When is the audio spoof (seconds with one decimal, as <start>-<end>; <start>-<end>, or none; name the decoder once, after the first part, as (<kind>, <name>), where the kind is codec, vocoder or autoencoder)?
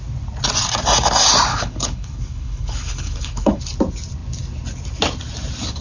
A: 1.5-3.6 (codec, HILCodec)